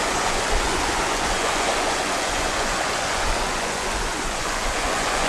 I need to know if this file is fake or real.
fake